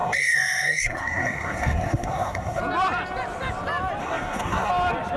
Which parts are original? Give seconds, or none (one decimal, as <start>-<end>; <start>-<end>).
2.6-4.0; 4.7-5.2